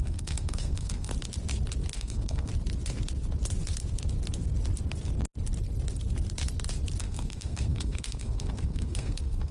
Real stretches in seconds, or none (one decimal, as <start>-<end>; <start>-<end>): 1.1-1.9; 2.5-7.0